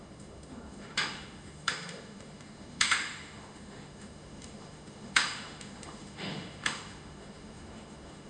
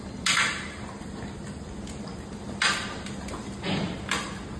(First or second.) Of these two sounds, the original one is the second